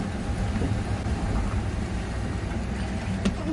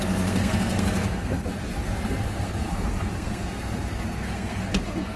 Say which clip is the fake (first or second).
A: second